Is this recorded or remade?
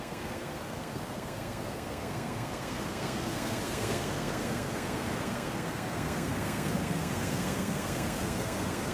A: remade